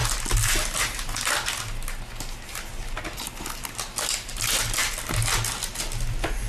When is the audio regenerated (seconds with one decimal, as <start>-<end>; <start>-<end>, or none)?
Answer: none